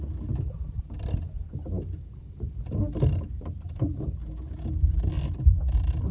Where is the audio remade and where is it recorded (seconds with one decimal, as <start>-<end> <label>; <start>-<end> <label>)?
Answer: 0.0-6.1 recorded